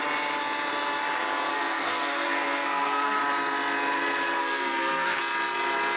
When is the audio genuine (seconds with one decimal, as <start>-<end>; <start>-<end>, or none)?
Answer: 0.0-1.5; 3.2-4.4; 5.2-6.0